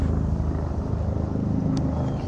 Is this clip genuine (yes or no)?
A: yes